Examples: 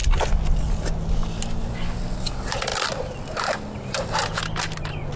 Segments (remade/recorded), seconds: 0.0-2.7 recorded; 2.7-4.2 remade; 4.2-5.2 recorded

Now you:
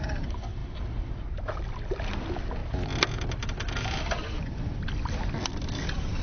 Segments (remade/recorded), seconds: 0.0-6.2 recorded

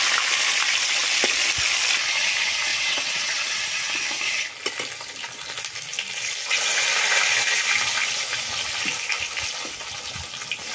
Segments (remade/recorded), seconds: 0.0-2.7 recorded; 2.7-3.6 remade; 3.6-10.7 recorded

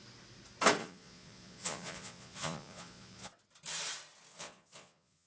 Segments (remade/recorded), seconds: 0.0-0.8 recorded; 0.8-3.3 remade; 3.3-4.3 recorded; 4.3-5.3 remade

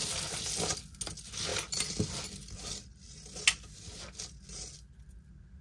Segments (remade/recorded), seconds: 0.0-5.6 recorded

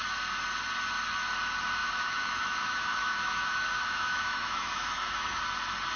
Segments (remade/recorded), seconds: 0.0-1.8 recorded; 1.8-5.4 remade; 5.4-6.0 recorded

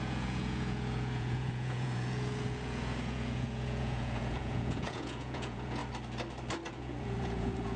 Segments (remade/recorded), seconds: 0.0-5.8 remade; 5.8-6.7 recorded; 6.7-7.8 remade

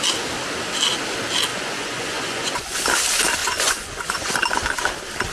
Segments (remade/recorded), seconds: 0.0-1.5 recorded; 1.5-2.8 remade; 2.8-3.4 recorded; 3.4-4.3 remade; 4.3-5.3 recorded